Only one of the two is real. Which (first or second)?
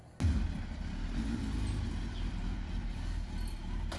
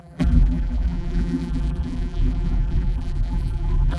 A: first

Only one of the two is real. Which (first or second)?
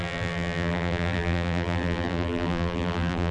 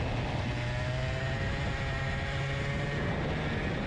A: second